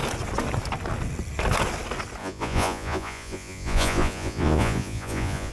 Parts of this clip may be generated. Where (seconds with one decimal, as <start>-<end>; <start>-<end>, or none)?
2.2-5.5